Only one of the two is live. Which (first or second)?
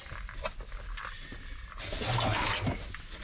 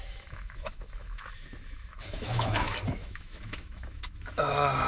first